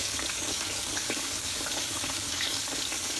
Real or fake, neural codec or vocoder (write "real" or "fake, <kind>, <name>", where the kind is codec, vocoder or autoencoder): fake, codec, DAC